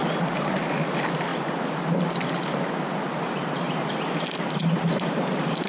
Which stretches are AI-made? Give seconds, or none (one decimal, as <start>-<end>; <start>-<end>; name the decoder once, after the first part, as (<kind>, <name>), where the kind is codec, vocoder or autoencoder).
none